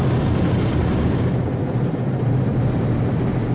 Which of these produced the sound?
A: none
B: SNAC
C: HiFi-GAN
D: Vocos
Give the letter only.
A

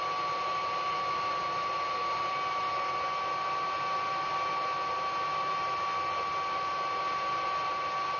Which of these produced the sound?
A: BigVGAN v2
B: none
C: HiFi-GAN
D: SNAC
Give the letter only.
B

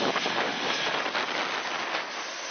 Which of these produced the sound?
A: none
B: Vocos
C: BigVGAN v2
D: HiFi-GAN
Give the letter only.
A